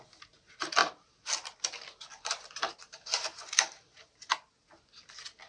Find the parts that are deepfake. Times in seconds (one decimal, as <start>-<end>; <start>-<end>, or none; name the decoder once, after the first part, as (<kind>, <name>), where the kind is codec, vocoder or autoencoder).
0.8-1.5 (vocoder, BigVGAN v2); 2.1-4.3